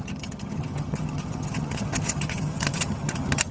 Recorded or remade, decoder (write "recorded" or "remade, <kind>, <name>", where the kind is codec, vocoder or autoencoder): remade, vocoder, HiFi-GAN